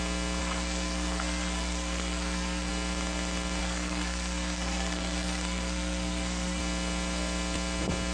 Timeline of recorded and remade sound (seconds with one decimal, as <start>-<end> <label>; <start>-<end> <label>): 0.0-0.4 recorded; 0.4-2.7 remade; 2.7-3.6 recorded; 3.6-6.6 remade; 6.6-8.1 recorded